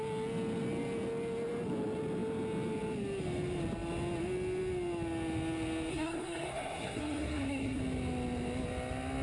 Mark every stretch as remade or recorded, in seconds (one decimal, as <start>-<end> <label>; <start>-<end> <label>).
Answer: 0.0-5.9 recorded; 5.9-7.8 remade; 7.8-9.2 recorded